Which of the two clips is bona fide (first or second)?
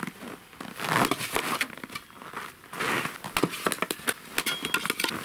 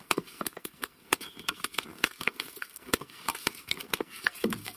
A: first